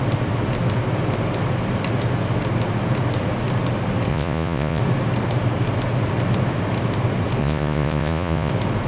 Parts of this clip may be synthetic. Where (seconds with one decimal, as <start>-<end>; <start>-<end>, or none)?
4.1-4.8; 7.4-8.5